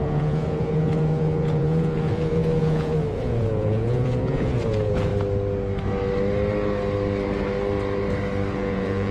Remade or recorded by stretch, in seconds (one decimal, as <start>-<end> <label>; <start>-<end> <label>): 0.0-5.1 remade; 5.1-8.5 recorded; 8.5-9.1 remade